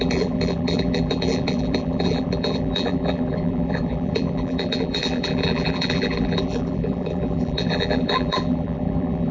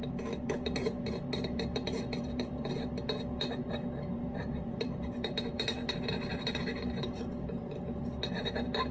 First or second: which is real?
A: second